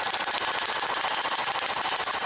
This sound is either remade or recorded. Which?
recorded